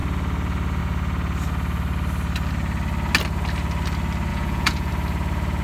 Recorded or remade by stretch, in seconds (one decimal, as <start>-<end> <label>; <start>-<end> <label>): 0.0-4.3 recorded; 4.3-4.9 remade; 4.9-5.6 recorded